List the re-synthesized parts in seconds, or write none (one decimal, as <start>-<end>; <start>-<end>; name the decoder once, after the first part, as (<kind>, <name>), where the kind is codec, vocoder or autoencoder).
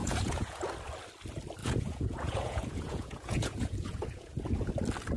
0.0-0.6 (vocoder, Vocos); 1.6-4.7